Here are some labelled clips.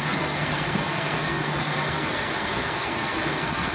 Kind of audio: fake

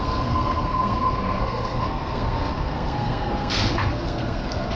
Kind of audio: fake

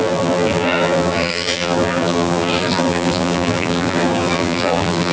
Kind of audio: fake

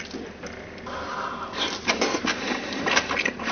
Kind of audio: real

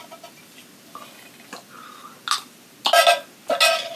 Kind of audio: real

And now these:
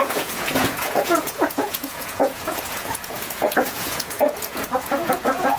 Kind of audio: fake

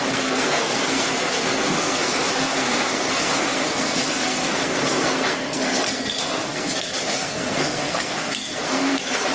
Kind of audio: fake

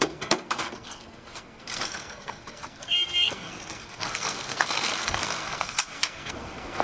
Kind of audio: fake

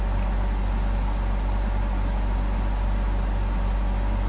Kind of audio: real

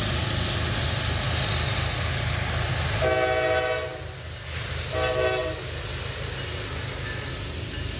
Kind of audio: real